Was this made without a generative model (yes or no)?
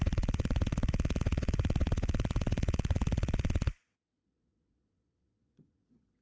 no